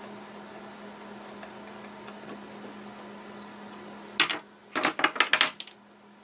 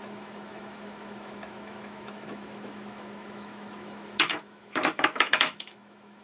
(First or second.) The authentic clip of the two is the first